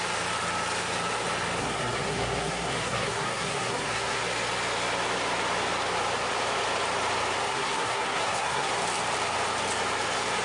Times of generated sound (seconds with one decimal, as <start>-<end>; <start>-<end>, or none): 1.6-4.2; 7.5-8.7